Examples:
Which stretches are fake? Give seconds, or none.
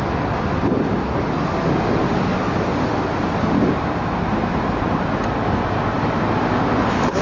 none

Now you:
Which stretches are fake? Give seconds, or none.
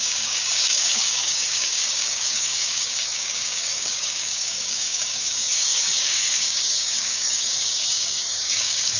0.0-9.0 (codec, DAC)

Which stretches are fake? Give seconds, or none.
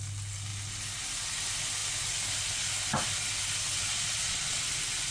3.8-4.6 (vocoder, Vocos)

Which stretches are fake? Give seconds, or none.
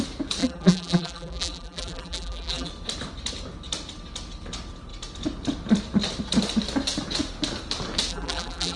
0.4-2.7 (vocoder, BigVGAN v2); 8.1-8.8